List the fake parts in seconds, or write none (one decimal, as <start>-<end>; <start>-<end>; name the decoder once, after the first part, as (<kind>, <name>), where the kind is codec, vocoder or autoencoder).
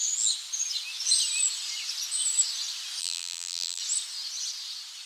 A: 3.0-3.8 (vocoder, BigVGAN v2)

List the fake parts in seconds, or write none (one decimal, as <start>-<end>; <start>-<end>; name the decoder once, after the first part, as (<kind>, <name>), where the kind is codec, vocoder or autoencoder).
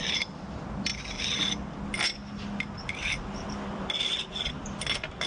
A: none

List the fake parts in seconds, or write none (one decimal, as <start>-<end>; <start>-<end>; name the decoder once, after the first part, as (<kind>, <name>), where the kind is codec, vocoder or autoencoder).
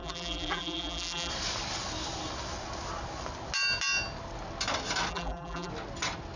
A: 0.0-1.3 (vocoder, BigVGAN v2); 5.1-5.7